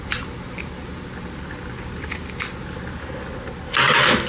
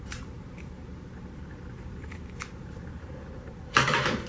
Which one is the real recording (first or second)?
first